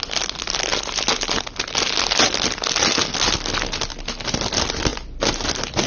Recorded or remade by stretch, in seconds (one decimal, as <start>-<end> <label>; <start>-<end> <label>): 0.0-5.9 recorded